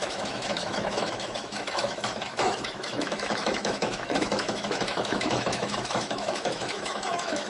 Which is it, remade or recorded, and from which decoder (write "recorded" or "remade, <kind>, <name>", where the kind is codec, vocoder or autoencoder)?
remade, autoencoder, DAC-VAE